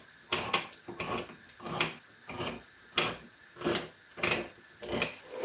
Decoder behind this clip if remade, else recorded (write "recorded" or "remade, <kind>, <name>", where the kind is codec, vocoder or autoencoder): recorded